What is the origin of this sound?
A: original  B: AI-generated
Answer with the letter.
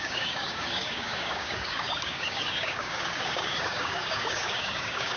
B